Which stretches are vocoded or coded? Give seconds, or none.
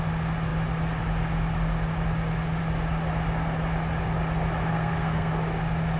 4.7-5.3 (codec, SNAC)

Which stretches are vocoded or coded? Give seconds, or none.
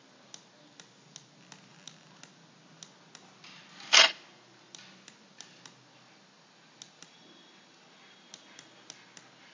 none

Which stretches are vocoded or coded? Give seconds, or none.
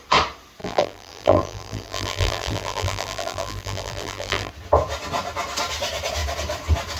0.6-4.5 (vocoder, BigVGAN v2)